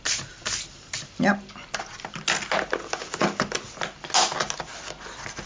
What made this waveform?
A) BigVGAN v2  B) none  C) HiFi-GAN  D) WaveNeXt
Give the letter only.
B